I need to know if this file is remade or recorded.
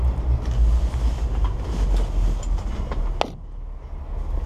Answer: recorded